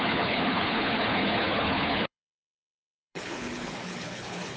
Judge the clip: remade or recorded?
remade